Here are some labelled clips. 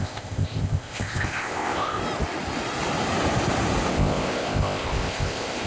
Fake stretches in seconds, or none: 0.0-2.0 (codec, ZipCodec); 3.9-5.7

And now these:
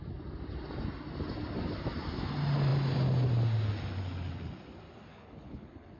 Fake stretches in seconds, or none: 5.1-6.0 (codec, HILCodec)

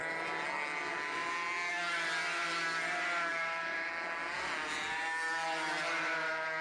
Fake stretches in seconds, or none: 3.3-3.9 (vocoder, BigVGAN v2)

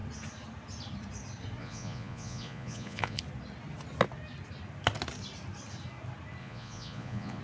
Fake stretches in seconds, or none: 1.6-3.2 (vocoder, Vocos); 6.4-7.4

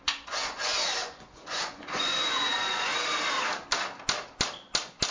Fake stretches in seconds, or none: 0.0-2.9 (vocoder, Vocos)

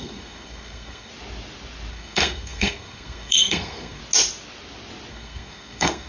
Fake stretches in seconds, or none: 0.0-1.1 (codec, SNAC); 1.9-4.0; 5.1-6.1